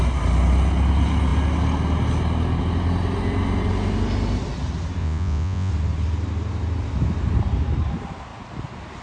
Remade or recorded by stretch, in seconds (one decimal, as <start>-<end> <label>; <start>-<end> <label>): 0.0-5.0 recorded; 5.0-5.7 remade; 5.7-9.0 recorded